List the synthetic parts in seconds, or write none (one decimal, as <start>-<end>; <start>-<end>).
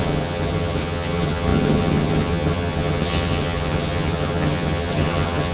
0.0-5.5